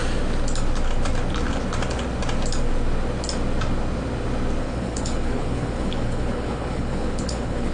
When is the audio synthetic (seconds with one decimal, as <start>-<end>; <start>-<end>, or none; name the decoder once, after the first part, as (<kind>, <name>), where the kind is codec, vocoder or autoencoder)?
4.6-7.7 (codec, HILCodec)